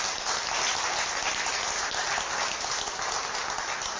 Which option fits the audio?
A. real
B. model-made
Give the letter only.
A